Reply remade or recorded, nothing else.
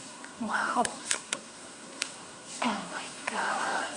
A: remade